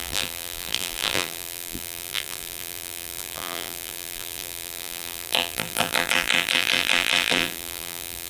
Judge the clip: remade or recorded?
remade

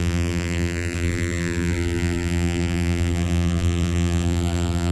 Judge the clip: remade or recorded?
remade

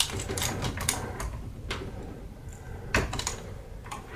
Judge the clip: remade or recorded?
remade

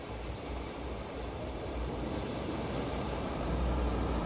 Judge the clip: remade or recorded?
remade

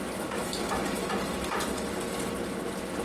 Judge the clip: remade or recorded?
recorded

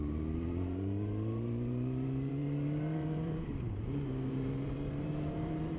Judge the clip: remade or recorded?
remade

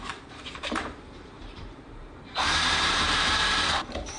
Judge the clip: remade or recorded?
remade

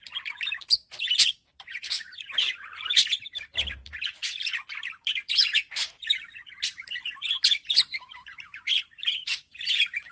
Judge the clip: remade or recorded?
remade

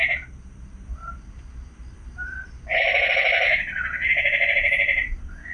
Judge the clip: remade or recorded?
remade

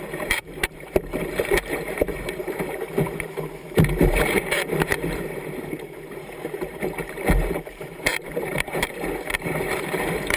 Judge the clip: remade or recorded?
remade